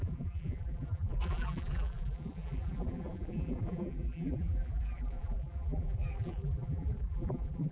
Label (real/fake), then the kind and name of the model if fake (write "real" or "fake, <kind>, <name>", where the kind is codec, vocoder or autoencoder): fake, vocoder, BigVGAN v2